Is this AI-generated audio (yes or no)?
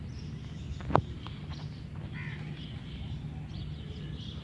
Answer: no